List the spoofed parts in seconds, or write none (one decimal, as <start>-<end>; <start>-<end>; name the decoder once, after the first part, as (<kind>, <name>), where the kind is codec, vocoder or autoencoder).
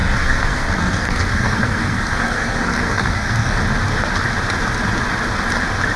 0.0-3.6 (codec, SNAC)